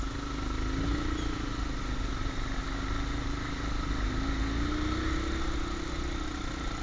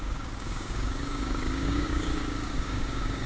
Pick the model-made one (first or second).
second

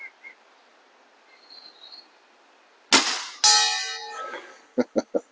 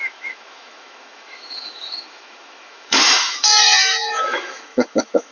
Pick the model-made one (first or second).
second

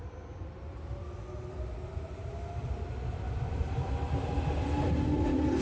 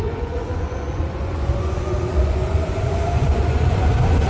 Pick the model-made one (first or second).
second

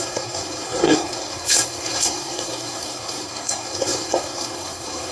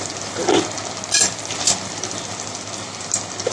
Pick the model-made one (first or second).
first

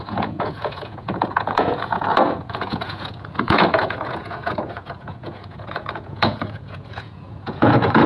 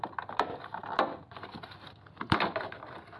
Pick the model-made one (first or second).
first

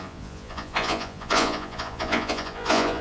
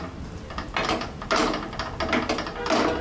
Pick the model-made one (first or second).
first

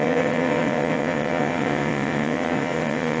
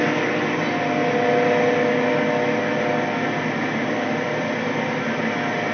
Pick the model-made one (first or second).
first